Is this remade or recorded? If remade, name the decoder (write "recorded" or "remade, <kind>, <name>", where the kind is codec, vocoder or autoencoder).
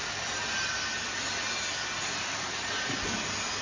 recorded